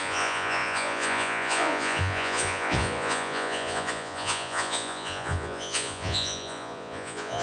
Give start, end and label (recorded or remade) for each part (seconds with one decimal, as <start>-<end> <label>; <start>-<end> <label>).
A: 0.0-7.4 remade